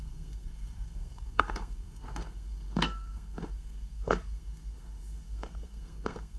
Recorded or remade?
remade